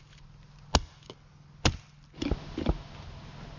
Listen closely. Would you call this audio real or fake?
real